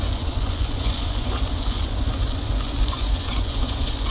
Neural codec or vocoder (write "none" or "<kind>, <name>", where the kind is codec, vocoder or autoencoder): vocoder, Vocos